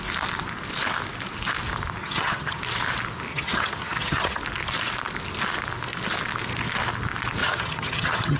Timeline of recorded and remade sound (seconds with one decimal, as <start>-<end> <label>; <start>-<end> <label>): 0.0-2.0 recorded; 2.0-2.6 remade; 2.6-3.3 recorded; 3.3-4.4 remade; 4.4-7.4 recorded; 7.4-8.4 remade